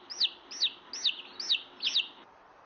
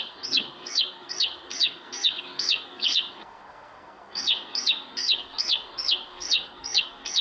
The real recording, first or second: first